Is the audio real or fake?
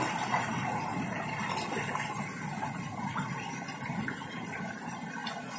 real